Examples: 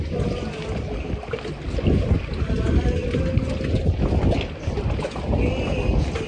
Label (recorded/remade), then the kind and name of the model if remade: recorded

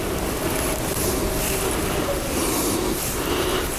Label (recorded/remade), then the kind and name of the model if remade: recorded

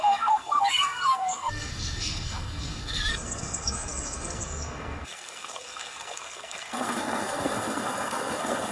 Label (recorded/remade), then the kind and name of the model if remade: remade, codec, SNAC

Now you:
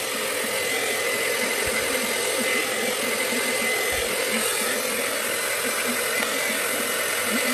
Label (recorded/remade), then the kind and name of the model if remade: recorded